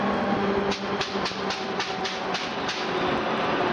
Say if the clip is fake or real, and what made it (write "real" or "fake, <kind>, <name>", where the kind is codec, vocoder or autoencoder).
real